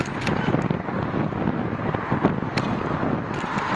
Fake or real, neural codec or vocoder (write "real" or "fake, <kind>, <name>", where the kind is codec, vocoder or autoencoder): real